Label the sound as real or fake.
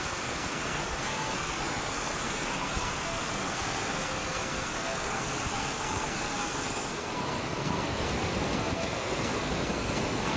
fake